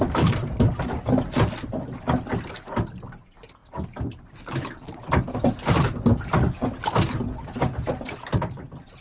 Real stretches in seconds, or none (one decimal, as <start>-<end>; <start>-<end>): 0.0-9.0